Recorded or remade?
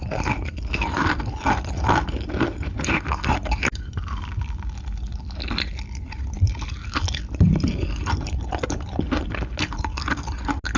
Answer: recorded